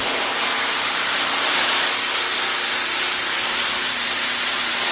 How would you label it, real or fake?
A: real